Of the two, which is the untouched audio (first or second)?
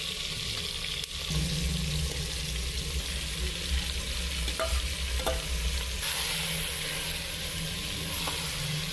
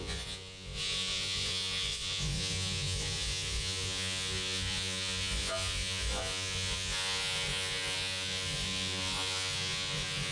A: first